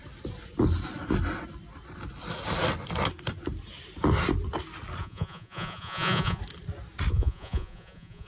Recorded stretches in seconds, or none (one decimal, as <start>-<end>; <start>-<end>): 0.0-5.0; 6.4-7.1